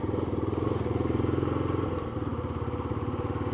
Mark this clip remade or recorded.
recorded